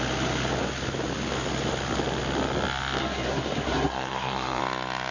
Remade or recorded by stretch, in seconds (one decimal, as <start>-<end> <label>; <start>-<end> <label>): 0.0-3.0 recorded; 3.0-4.6 remade; 4.6-5.1 recorded